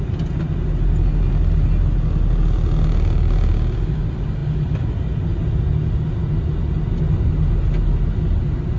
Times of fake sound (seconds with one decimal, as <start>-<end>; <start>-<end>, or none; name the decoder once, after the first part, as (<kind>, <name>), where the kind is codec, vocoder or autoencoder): none